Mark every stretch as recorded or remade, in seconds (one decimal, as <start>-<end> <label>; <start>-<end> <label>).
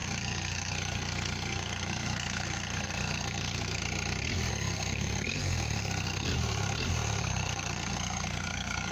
0.0-3.8 remade; 3.8-4.5 recorded; 4.5-6.3 remade; 6.3-7.2 recorded; 7.2-8.9 remade